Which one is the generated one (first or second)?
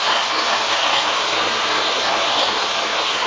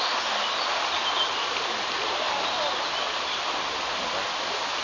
first